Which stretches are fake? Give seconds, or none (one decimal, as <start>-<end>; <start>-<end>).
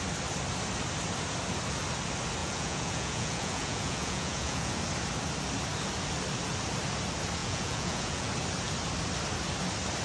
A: 2.4-4.7; 7.4-8.3